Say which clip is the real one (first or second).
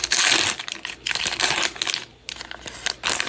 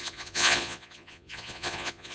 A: first